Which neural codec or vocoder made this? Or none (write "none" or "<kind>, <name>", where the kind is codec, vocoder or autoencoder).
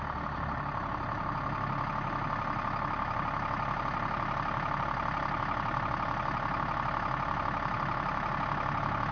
none